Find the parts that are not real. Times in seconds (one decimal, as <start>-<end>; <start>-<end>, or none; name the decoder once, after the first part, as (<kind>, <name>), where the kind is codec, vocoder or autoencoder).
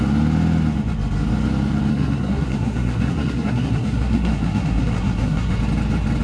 1.9-5.6 (codec, SNAC)